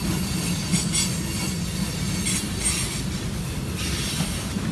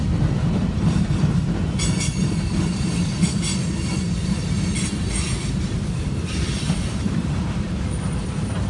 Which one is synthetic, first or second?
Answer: second